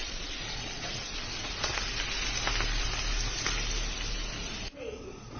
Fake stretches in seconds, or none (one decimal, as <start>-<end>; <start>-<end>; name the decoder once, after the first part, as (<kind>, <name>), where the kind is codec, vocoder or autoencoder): 0.0-1.7 (vocoder, Vocos); 4.9-5.4